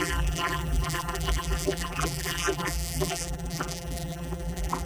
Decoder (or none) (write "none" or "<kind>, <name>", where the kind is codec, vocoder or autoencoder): vocoder, BigVGAN v2